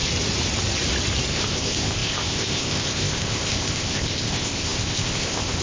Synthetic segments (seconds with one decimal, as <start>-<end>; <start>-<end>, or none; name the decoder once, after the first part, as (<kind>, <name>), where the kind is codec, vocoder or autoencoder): 1.3-5.6 (codec, ZipCodec)